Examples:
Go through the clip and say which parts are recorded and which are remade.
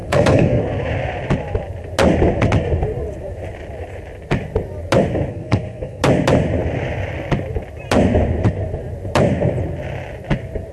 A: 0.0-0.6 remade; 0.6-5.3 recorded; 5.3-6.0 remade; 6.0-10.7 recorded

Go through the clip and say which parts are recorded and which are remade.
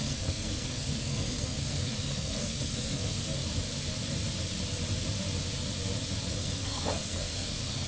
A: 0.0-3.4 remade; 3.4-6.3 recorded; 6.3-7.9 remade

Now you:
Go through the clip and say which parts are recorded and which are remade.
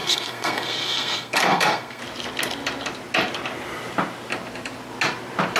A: 0.0-2.0 remade; 2.0-5.6 recorded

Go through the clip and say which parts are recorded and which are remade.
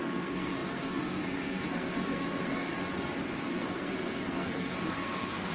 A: 0.0-2.7 remade; 2.7-3.3 recorded; 3.3-5.5 remade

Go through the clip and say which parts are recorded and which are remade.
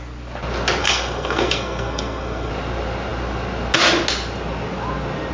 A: 0.0-0.8 recorded; 0.8-2.5 remade; 2.5-5.3 recorded